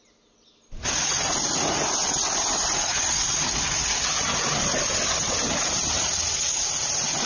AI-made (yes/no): no